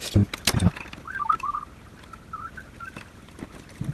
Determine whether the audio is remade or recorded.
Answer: recorded